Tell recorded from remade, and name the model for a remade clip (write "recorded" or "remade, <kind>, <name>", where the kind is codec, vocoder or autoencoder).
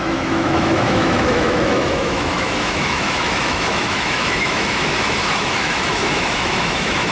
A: remade, autoencoder, DAC-VAE